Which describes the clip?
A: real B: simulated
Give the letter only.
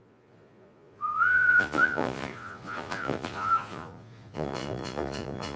B